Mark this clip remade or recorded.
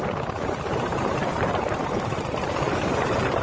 remade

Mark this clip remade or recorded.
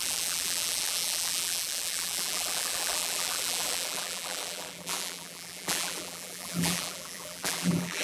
remade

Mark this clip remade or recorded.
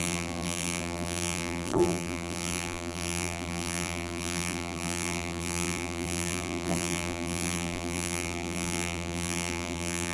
remade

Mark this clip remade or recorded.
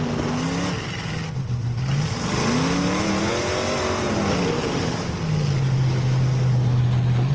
recorded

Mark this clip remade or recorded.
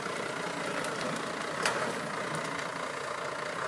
recorded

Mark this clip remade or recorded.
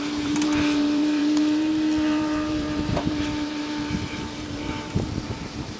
remade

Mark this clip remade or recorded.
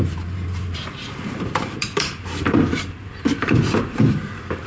remade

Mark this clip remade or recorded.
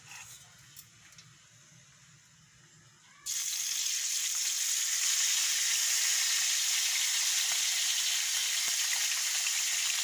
recorded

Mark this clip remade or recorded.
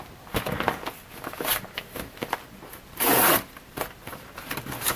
recorded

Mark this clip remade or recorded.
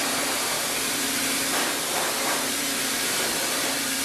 remade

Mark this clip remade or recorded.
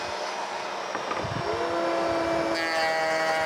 recorded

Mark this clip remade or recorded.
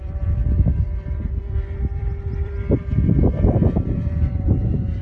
remade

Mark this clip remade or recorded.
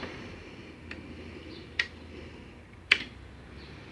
remade